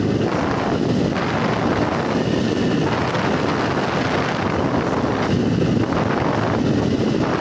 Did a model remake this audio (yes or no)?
no